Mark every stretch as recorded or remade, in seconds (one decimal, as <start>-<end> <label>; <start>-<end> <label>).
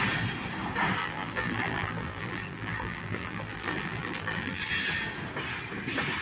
0.0-1.0 recorded; 1.0-4.7 remade; 4.7-6.2 recorded